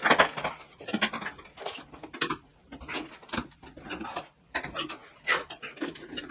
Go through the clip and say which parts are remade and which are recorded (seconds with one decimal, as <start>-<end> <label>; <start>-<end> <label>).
0.0-2.5 recorded; 2.5-4.1 remade; 4.1-6.3 recorded